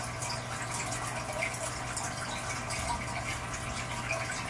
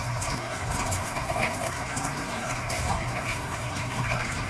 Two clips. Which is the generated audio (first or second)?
second